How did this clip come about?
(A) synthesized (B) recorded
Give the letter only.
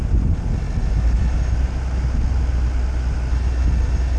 B